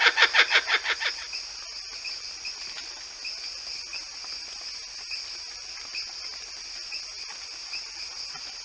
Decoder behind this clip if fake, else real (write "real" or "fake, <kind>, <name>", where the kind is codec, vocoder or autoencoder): real